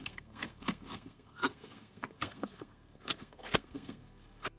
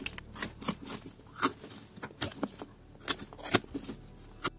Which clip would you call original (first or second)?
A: second